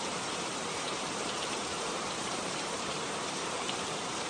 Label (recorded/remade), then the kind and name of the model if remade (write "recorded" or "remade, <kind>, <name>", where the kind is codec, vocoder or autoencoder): remade, vocoder, BigVGAN v2